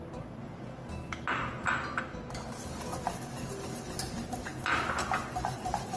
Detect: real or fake real